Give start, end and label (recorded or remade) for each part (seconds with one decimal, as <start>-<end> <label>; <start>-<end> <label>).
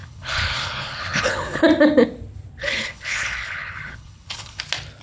0.0-1.6 remade; 1.6-2.6 recorded; 2.6-4.6 remade; 4.6-5.0 recorded